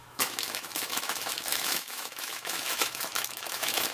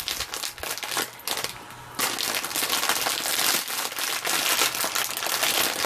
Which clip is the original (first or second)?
second